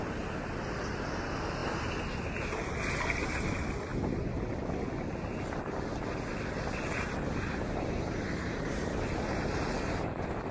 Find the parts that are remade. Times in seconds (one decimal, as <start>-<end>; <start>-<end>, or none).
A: none